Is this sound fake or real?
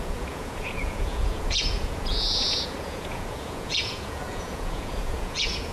fake